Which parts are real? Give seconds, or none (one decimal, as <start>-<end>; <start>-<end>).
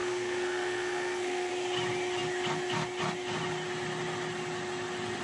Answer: 1.5-5.2